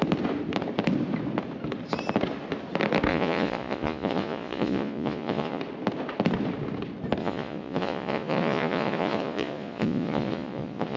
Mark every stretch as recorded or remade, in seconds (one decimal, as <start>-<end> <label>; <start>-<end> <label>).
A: 0.0-3.1 recorded; 3.1-5.6 remade; 5.6-7.2 recorded; 7.2-11.0 remade